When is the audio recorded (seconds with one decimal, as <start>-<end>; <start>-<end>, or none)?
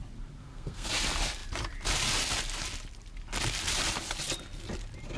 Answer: 0.0-0.4; 0.9-5.2